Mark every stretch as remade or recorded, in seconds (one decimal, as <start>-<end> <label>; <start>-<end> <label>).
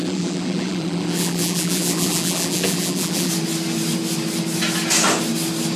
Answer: 0.0-3.3 remade; 3.3-5.8 recorded